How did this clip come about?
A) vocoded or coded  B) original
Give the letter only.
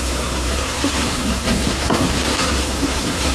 A